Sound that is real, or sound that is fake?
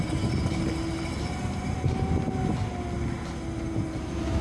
real